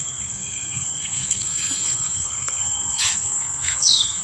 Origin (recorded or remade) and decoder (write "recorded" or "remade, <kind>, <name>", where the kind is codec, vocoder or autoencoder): remade, codec, SNAC